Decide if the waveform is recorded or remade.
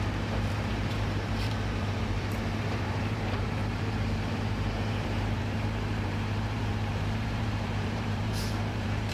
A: remade